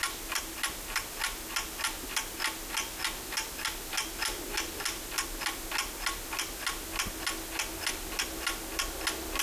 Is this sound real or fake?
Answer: real